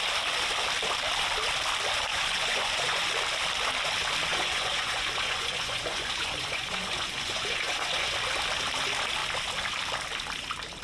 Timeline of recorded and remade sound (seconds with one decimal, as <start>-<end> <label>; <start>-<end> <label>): 0.0-2.1 recorded; 2.1-3.1 remade; 3.1-4.3 recorded; 4.3-8.1 remade; 8.1-10.8 recorded